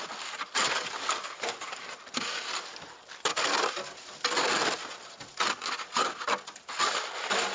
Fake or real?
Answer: real